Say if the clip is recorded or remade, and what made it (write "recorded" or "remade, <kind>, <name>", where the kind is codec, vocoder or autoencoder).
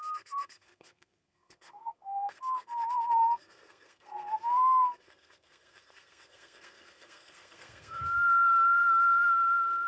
remade, codec, SNAC